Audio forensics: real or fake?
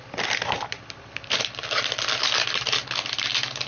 real